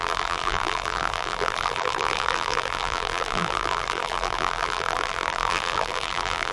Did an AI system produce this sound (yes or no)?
yes